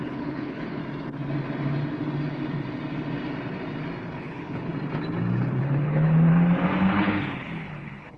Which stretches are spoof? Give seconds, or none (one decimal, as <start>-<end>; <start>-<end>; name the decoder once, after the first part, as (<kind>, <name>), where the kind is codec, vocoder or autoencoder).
0.0-0.8 (codec, HILCodec); 4.2-4.7; 5.6-6.3; 6.9-8.2